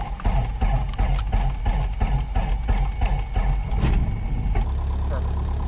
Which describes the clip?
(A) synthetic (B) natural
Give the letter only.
B